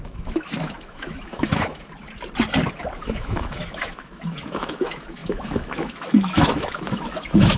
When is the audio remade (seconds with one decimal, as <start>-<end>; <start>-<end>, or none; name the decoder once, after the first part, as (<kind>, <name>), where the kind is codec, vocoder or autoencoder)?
0.0-2.0 (autoencoder, DAC-VAE); 3.0-7.6